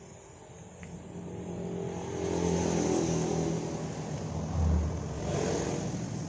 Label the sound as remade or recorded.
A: recorded